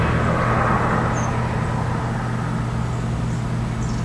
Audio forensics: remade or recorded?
recorded